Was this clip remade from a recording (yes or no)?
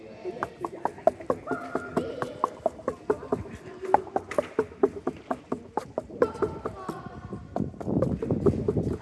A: no